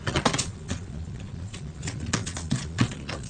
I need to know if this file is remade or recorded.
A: remade